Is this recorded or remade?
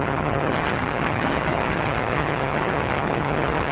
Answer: remade